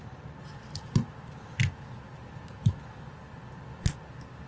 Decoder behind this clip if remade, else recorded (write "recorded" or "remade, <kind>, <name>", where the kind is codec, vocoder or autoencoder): recorded